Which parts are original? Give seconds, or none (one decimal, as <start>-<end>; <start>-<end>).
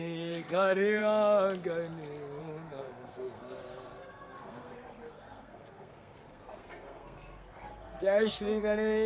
1.0-2.4